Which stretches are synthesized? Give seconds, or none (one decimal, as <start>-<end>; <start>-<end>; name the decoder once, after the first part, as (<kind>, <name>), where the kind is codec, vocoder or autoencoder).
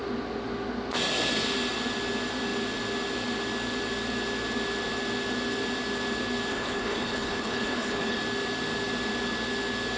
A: 6.5-8.2 (codec, HILCodec)